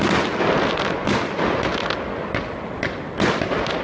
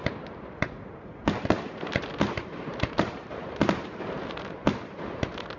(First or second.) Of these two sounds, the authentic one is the first